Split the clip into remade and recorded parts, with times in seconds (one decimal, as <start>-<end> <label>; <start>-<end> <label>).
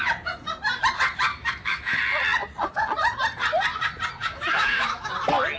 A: 0.0-1.3 recorded; 1.3-2.0 remade; 2.0-4.2 recorded; 4.2-5.1 remade; 5.1-5.6 recorded